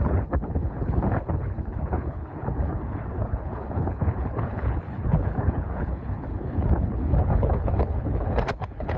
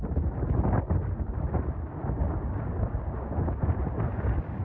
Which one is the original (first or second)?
second